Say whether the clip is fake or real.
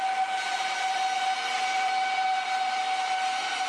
real